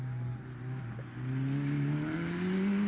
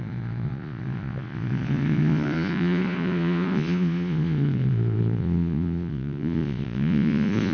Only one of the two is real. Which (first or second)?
first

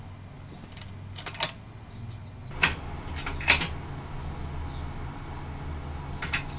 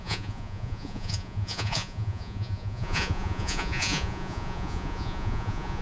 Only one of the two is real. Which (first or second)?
first